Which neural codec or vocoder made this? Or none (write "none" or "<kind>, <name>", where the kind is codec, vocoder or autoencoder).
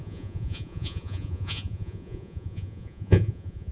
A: vocoder, Vocos